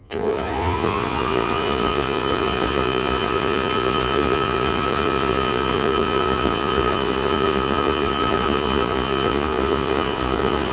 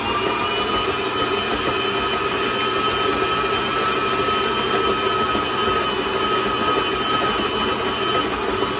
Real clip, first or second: second